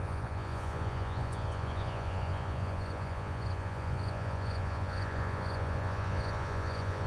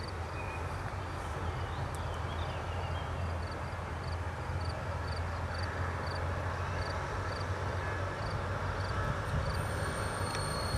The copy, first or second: first